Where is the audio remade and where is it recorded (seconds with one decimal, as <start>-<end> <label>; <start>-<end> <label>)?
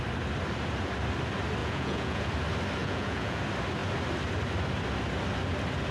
0.0-1.6 recorded; 1.6-2.3 remade; 2.3-2.8 recorded; 2.8-3.4 remade; 3.4-5.9 recorded